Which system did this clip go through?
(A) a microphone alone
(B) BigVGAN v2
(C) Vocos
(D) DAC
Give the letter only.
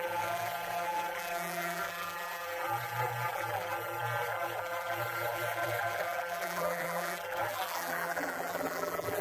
B